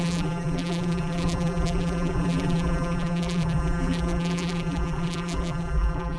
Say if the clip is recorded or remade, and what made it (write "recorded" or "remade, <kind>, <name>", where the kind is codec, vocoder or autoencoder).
remade, vocoder, BigVGAN v2